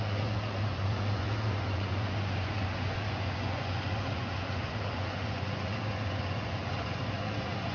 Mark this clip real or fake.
fake